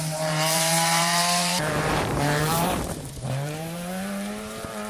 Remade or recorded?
remade